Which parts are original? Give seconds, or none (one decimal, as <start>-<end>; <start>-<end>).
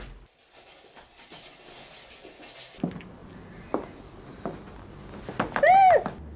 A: 0.0-6.4